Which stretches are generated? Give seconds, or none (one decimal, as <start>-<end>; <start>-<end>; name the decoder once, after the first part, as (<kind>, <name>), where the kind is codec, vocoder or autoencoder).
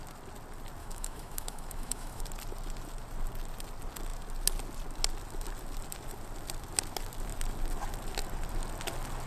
0.8-2.2 (autoencoder, DAC-VAE)